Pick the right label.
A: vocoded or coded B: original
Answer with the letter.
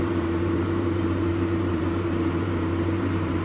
A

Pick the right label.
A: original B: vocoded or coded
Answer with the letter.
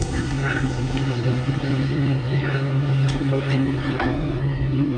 B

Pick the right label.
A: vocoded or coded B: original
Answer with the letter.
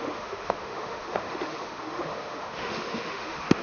A